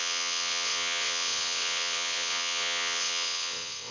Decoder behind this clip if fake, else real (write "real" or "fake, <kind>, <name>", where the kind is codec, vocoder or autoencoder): fake, vocoder, WaveNeXt